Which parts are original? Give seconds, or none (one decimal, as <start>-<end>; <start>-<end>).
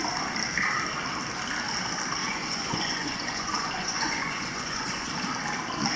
0.0-2.2; 5.1-6.0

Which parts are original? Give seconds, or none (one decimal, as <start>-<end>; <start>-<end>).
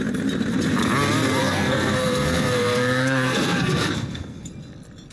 0.0-1.4; 4.5-5.1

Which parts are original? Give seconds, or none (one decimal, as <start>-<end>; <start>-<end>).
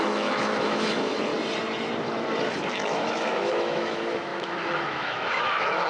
1.3-2.7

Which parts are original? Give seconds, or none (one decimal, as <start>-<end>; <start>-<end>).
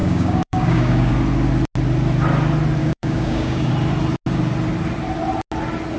1.1-2.8; 3.7-6.0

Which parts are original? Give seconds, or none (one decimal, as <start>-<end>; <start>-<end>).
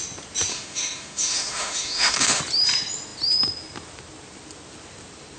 0.0-0.5; 2.4-5.4